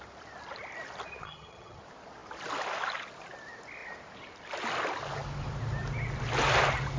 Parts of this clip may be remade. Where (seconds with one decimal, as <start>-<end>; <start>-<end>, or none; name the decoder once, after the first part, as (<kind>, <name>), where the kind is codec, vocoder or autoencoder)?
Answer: 1.2-1.8 (vocoder, HiFi-GAN)